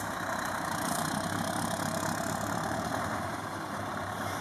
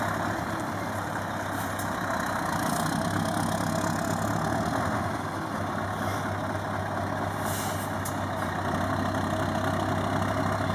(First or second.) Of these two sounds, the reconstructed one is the first